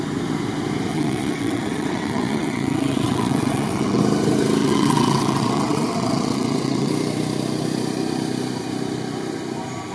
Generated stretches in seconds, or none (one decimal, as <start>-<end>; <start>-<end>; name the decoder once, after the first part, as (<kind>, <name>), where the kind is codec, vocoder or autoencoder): 0.9-4.0 (vocoder, WaveNeXt); 4.6-6.9